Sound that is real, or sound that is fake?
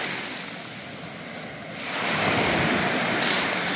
real